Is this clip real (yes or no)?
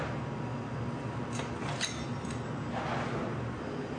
yes